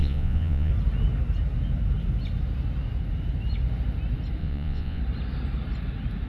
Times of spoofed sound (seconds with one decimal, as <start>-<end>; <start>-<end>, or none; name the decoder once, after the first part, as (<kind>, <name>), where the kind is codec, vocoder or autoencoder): 0.0-0.7 (vocoder, Vocos); 4.4-5.0